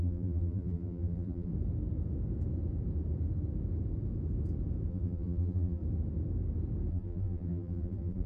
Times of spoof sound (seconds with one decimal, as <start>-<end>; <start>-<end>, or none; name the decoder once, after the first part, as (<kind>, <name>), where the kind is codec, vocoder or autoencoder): 0.0-1.5 (vocoder, BigVGAN v2); 4.9-5.8; 6.9-8.3